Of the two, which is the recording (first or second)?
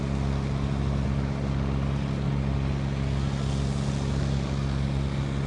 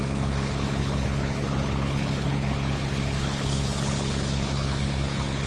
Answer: first